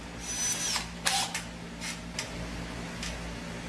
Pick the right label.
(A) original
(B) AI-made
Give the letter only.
A